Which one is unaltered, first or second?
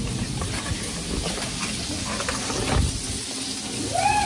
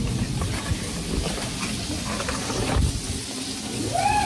first